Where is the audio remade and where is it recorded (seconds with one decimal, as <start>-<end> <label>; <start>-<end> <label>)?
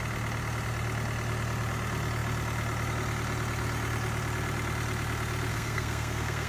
0.0-5.5 recorded; 5.5-6.5 remade